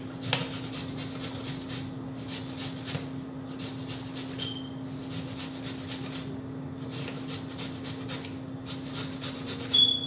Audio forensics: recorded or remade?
recorded